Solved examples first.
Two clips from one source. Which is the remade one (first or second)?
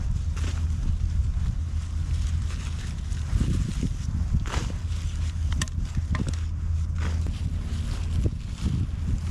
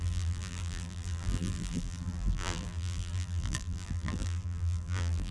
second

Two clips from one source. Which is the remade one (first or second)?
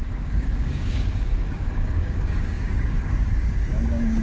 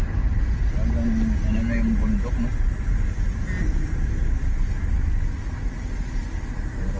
first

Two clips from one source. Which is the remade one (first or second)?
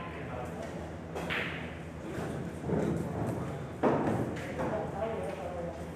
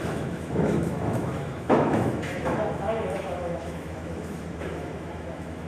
second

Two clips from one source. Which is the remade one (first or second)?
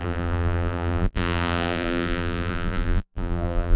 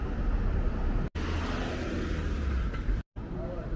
first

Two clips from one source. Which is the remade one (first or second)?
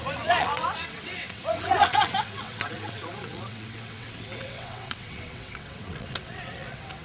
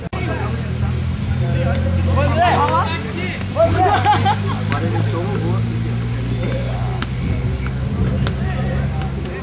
first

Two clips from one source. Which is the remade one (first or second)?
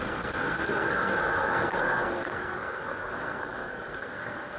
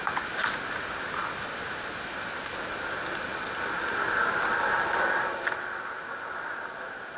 first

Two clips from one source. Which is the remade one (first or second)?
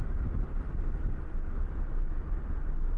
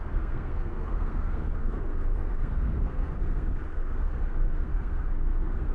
second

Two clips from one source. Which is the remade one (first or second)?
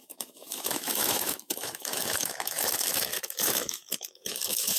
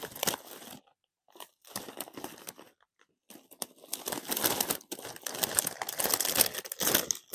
first